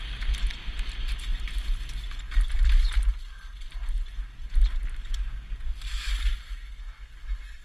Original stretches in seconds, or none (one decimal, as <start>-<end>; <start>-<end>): 0.0-7.6